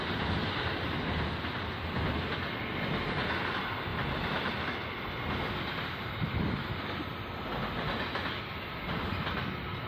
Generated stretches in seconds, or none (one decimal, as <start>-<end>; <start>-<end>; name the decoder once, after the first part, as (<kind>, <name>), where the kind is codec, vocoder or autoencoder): none